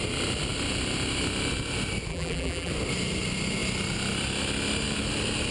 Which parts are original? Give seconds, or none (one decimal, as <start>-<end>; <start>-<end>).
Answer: 0.0-2.1; 2.7-5.5